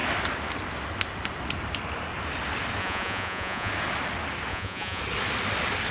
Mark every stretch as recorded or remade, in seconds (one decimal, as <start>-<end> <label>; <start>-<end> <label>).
0.0-2.8 recorded; 2.8-3.7 remade; 3.7-4.5 recorded; 4.5-5.0 remade; 5.0-5.9 recorded